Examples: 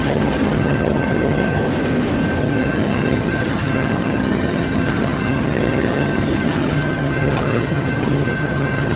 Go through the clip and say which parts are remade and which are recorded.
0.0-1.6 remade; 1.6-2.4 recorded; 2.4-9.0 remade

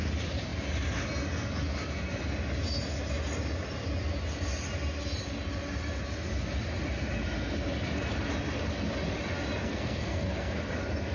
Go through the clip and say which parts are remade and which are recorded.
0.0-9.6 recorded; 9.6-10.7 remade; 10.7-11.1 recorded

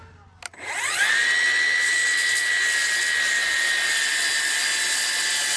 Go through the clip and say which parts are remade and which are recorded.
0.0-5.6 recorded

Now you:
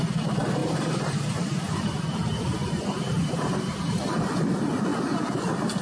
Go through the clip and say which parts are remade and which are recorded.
0.0-0.6 recorded; 0.6-2.0 remade; 2.0-2.6 recorded; 2.6-4.1 remade; 4.1-5.8 recorded